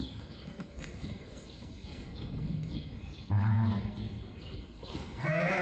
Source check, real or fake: fake